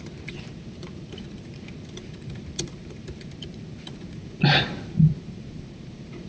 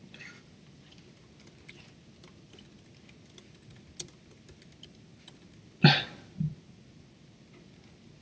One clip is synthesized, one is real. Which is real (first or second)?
second